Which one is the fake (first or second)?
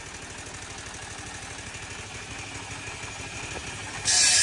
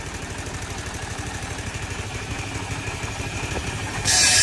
second